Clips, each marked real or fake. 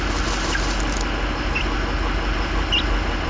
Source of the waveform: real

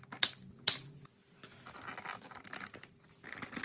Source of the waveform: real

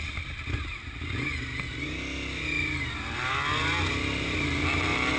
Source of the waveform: real